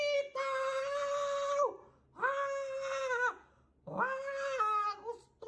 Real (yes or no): yes